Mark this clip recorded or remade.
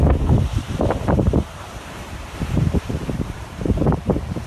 remade